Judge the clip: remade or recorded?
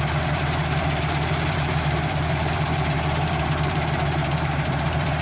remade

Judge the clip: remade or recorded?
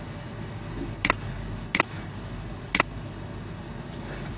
recorded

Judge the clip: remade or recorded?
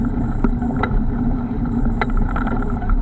remade